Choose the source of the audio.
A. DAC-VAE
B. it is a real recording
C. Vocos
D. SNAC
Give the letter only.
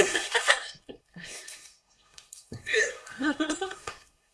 D